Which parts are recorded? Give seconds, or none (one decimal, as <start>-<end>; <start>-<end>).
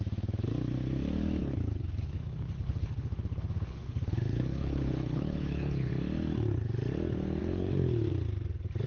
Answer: 0.0-1.4; 5.9-7.4; 8.1-8.9